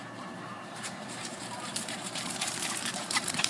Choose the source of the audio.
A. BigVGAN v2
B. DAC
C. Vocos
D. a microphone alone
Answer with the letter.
A